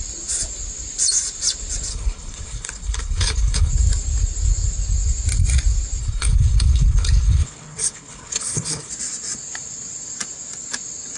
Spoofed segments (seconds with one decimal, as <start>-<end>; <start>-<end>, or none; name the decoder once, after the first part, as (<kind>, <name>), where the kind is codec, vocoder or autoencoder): 1.9-3.7 (codec, HILCodec); 6.0-8.9